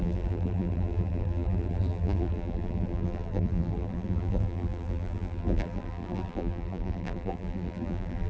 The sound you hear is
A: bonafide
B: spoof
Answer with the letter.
B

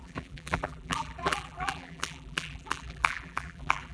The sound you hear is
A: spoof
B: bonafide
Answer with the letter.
A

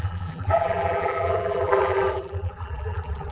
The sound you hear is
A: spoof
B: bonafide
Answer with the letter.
A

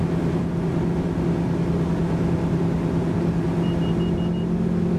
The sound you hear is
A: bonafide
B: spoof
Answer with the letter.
A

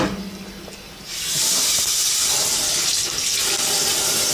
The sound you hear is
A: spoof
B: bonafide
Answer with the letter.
B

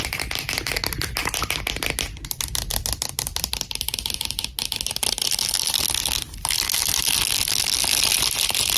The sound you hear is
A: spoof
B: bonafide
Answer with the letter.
B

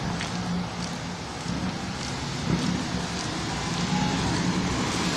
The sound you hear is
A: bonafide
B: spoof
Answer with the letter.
A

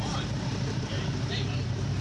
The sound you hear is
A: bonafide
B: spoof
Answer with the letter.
B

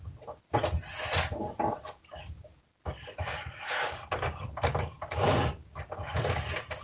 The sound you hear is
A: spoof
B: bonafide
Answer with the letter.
B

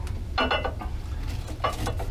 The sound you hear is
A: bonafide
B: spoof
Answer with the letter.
A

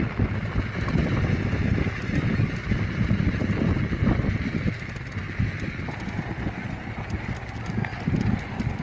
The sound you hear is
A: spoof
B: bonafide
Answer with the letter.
B